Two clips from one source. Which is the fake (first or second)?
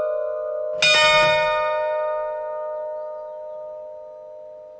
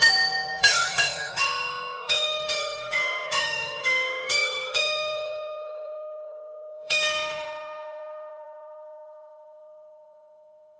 second